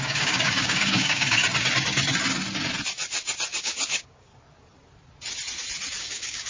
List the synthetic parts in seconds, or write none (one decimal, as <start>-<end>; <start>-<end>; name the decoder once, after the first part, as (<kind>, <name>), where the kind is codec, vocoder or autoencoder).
0.0-1.4 (codec, DAC); 3.6-4.3; 6.0-6.5

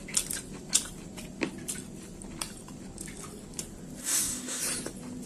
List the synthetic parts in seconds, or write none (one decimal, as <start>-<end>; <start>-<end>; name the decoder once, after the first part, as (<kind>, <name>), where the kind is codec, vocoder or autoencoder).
4.0-4.6 (codec, DAC)